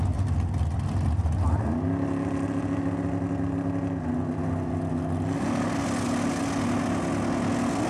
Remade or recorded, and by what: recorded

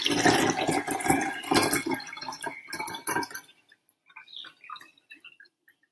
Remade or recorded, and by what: recorded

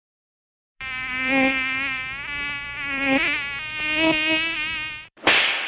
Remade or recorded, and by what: remade, vocoder, BigVGAN v2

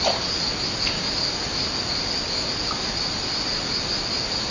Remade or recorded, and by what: recorded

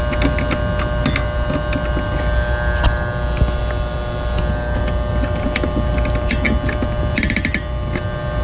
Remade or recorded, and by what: recorded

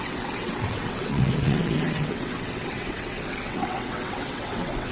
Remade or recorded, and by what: remade, vocoder, WaveNeXt